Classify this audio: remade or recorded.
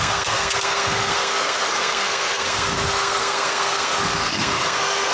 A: remade